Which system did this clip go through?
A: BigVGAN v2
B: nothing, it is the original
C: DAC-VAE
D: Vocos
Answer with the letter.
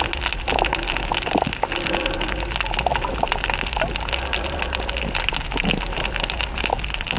B